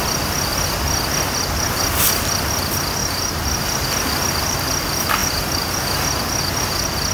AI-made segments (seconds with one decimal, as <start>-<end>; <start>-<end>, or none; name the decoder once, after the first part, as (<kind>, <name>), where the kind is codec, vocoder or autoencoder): 3.0-3.6 (vocoder, BigVGAN v2); 5.2-5.8